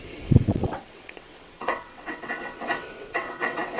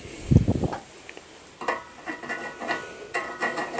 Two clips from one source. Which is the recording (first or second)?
second